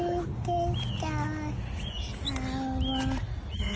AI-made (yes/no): no